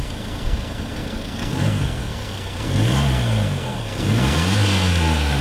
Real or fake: fake